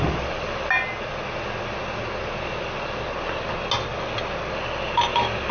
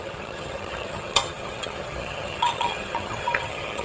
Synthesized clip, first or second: second